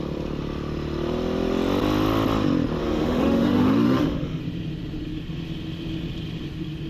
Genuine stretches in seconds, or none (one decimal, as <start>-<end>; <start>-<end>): 0.0-2.8; 4.4-6.9